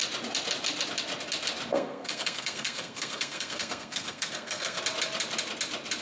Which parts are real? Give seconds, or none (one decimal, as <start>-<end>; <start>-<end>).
0.0-1.7; 4.8-6.0